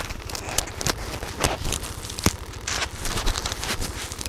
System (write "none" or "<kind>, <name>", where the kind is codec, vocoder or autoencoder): vocoder, BigVGAN v2